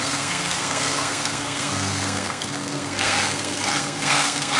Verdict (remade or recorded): remade